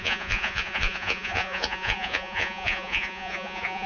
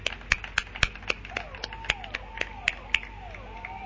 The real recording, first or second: second